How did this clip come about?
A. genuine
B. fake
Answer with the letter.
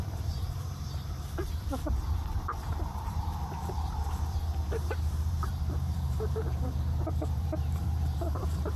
B